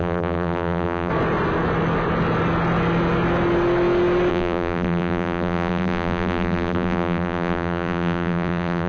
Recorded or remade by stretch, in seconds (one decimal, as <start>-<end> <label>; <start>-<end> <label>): 0.0-1.1 remade; 1.1-4.3 recorded; 4.3-8.9 remade